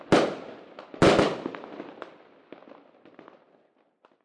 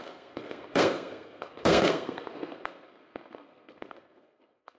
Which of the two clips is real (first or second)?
first